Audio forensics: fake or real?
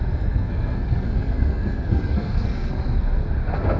fake